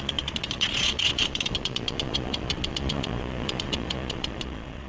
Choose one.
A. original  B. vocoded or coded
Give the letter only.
B